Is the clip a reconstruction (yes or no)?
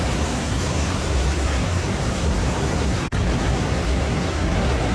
yes